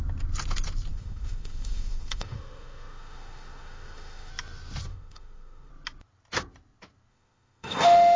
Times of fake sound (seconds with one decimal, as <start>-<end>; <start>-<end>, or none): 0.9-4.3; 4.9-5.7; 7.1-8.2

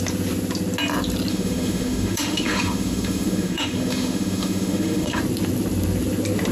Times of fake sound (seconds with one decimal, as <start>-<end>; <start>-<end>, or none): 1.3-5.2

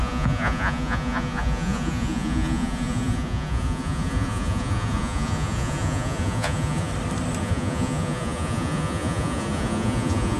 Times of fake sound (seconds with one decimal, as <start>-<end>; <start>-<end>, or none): 0.0-6.9; 7.4-10.4

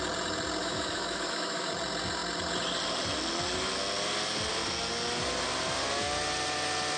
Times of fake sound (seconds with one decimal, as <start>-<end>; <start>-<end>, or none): 0.6-1.7

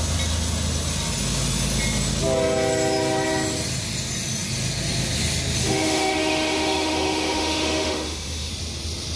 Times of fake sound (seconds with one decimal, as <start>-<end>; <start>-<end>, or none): 5.6-8.5